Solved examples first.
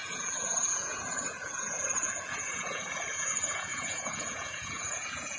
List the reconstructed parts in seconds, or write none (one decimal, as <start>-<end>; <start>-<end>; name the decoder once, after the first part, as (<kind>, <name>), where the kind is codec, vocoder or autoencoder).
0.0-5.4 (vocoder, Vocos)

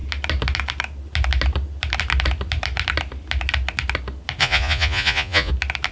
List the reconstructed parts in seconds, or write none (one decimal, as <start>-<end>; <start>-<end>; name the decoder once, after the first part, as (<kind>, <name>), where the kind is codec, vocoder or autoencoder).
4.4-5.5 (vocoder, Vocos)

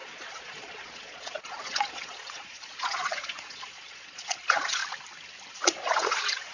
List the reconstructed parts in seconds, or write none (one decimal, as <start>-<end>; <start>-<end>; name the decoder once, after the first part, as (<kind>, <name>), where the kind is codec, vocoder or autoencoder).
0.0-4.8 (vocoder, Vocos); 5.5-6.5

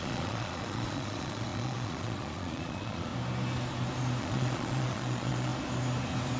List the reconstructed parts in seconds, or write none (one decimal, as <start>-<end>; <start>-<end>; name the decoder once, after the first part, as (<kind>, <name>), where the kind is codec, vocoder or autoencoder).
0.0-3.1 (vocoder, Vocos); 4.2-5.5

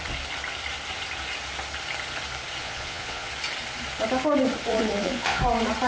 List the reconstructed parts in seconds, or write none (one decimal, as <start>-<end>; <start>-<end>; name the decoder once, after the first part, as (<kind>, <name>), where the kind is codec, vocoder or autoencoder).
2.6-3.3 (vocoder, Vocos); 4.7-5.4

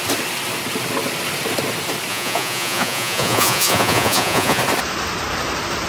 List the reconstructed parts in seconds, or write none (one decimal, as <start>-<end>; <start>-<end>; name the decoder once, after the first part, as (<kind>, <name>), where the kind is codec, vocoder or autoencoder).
2.1-4.6 (vocoder, Vocos)

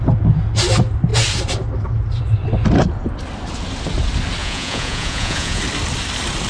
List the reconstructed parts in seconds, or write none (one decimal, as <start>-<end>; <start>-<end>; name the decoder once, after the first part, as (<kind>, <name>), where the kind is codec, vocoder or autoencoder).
4.4-5.6 (vocoder, Vocos)